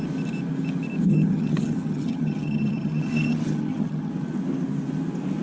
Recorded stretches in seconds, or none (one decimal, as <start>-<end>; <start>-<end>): 0.0-1.1; 4.1-5.4